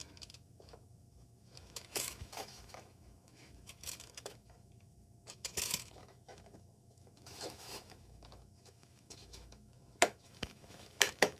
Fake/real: fake